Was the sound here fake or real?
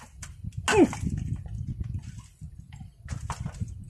real